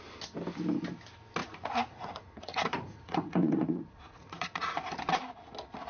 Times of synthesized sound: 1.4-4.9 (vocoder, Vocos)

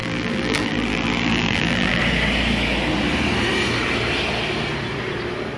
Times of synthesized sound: 0.0-2.0 (vocoder, BigVGAN v2)

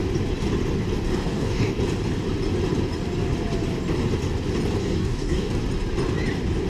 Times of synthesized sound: 1.1-1.8 (codec, DAC); 4.8-5.5

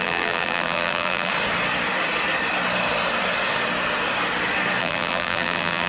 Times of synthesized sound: 0.0-1.3 (vocoder, BigVGAN v2); 4.8-5.9